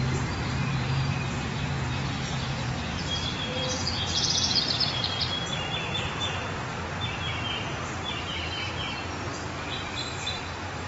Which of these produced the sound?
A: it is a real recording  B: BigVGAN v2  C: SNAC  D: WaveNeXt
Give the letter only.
B